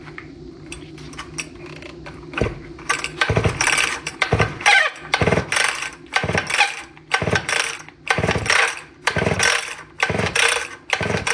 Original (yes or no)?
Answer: yes